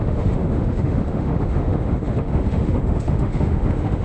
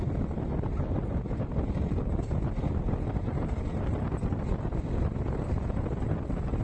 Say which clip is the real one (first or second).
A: second